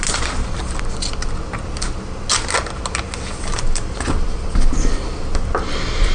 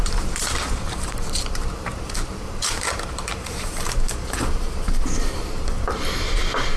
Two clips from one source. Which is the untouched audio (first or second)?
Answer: first